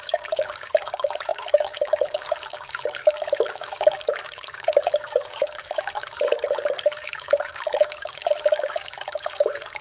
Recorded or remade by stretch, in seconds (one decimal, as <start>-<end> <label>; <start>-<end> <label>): 0.0-9.8 remade